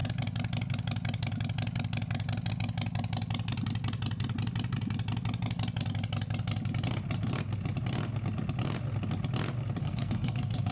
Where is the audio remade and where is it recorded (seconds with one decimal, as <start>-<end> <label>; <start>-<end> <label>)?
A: 0.0-9.8 recorded; 9.8-10.7 remade